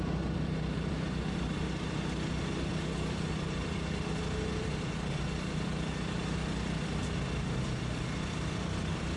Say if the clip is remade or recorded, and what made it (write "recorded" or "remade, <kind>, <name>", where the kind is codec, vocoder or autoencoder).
remade, vocoder, BigVGAN v2